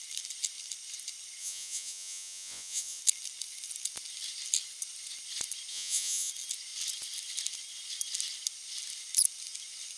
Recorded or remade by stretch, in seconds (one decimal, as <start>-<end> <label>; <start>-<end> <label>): 0.0-1.4 recorded; 1.4-3.0 remade; 3.0-5.7 recorded; 5.7-6.3 remade; 6.3-10.0 recorded